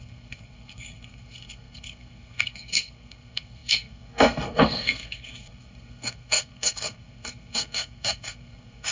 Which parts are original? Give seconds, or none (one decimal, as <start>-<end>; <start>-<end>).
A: none